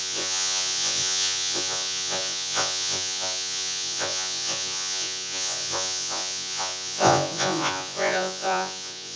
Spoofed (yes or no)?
yes